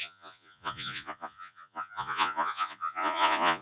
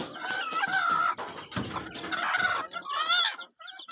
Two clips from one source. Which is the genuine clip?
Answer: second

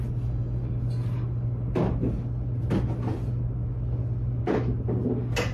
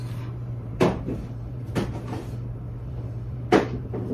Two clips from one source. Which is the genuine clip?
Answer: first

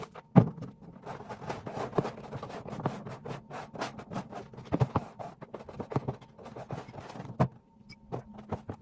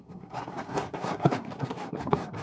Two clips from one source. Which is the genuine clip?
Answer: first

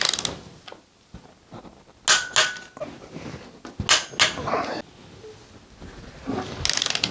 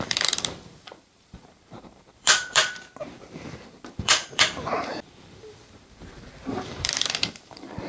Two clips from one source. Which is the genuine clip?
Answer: first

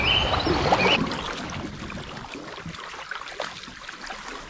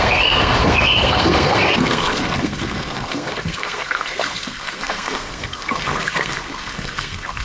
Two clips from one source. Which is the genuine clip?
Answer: first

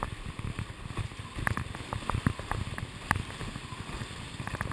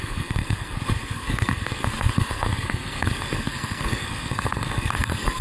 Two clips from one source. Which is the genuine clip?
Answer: first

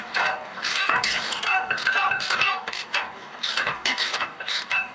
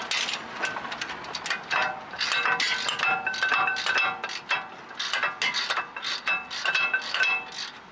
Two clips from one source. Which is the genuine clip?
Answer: second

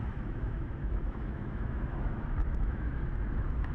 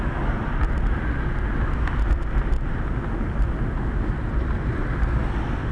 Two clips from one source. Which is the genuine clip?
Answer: second